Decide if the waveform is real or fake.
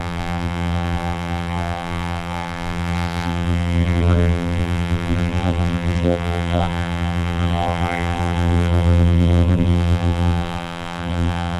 fake